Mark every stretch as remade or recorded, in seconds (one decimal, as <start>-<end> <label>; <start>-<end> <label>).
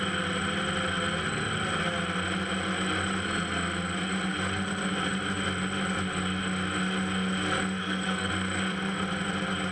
0.0-7.8 recorded; 7.8-8.3 remade; 8.3-9.7 recorded